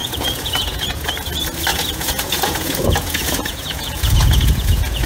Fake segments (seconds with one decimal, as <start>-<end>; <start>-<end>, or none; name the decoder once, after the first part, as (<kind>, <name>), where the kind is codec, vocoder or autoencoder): 0.0-1.1 (vocoder, Vocos); 1.7-5.1